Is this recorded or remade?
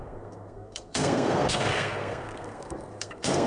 remade